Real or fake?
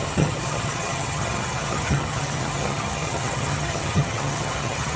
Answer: fake